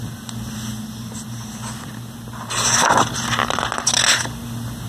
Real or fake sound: real